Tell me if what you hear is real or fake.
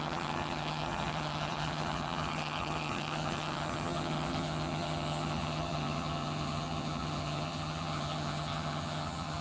fake